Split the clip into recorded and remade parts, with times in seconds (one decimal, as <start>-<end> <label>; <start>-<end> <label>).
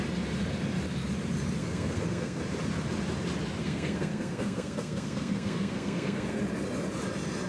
0.0-1.6 recorded; 1.6-2.4 remade; 2.4-3.6 recorded; 3.6-6.4 remade; 6.4-7.5 recorded